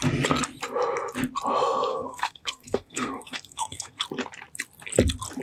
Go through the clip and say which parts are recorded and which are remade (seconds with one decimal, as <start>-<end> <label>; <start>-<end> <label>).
0.0-1.9 recorded; 1.9-4.0 remade; 4.0-5.4 recorded